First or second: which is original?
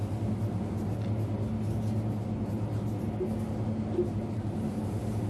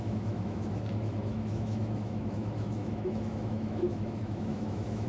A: first